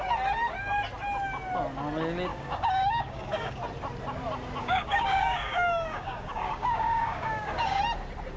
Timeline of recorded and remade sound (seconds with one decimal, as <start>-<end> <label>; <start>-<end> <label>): 0.0-2.3 recorded; 2.3-3.6 remade; 3.6-4.6 recorded; 4.6-7.8 remade; 7.8-8.4 recorded